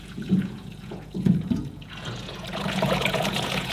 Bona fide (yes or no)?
no